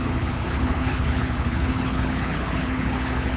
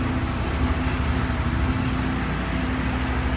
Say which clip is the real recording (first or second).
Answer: second